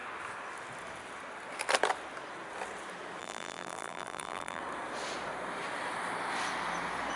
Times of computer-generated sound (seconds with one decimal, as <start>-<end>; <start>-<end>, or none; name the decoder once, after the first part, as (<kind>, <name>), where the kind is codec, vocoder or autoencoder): 3.2-4.6 (vocoder, BigVGAN v2)